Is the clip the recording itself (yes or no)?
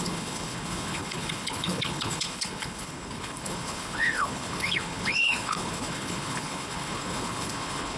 no